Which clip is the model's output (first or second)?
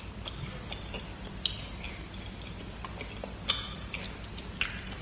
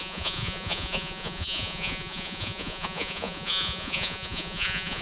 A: second